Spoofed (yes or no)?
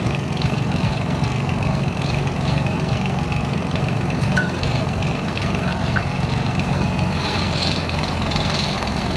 yes